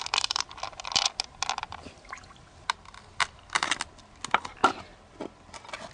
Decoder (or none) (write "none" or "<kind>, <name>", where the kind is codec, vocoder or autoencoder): none